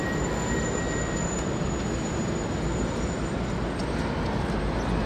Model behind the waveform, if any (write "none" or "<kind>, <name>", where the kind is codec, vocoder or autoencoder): none